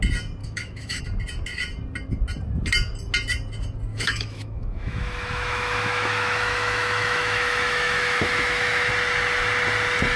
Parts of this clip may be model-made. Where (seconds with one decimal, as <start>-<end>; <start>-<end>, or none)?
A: 0.4-1.0; 3.9-8.9